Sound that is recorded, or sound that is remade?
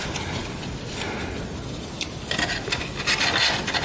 recorded